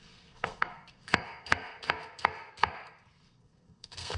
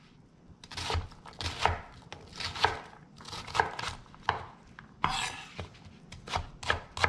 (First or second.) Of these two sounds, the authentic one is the second